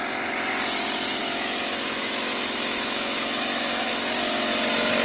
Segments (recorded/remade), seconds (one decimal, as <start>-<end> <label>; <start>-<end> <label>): 0.0-1.2 recorded; 1.2-3.9 remade; 3.9-5.0 recorded